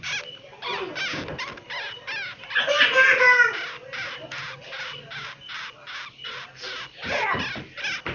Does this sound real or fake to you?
real